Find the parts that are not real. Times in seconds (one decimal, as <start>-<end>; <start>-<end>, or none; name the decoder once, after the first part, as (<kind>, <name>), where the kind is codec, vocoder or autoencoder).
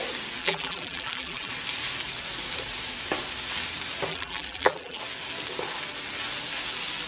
0.4-1.5 (vocoder, BigVGAN v2); 4.1-5.0